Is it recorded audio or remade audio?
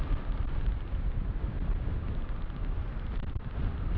recorded